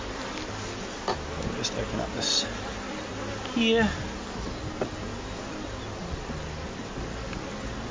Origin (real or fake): real